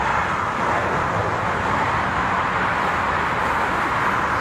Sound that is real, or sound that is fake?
real